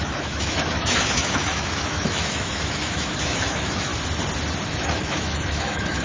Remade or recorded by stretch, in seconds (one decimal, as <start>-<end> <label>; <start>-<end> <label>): 0.0-3.9 remade; 3.9-4.7 recorded; 4.7-6.0 remade